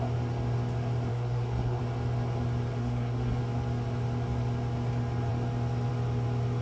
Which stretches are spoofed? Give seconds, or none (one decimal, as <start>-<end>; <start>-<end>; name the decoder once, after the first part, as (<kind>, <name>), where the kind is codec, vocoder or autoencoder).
1.1-1.8 (codec, SNAC); 2.8-3.4